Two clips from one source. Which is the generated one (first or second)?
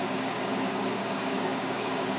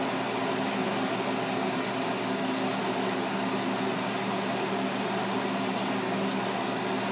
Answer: first